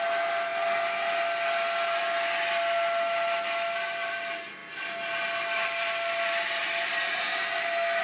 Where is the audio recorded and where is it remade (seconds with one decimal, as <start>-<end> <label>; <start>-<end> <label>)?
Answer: 0.0-8.0 recorded